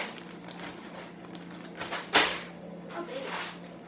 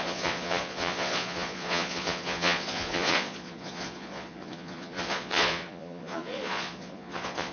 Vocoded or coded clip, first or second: second